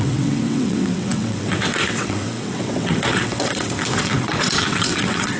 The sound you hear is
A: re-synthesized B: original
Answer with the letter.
A